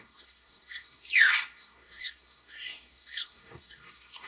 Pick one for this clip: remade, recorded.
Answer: remade